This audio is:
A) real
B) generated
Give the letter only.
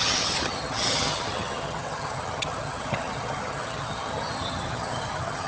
B